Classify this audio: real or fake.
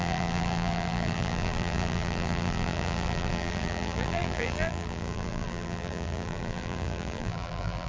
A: fake